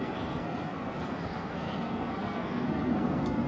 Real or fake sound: fake